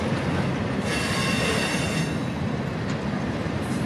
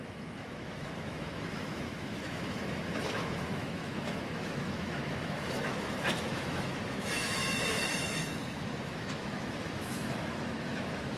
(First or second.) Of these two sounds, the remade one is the second